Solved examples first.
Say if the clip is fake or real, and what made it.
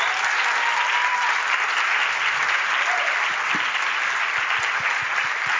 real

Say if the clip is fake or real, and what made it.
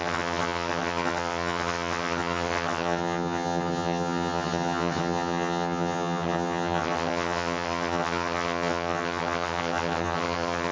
fake, vocoder, HiFi-GAN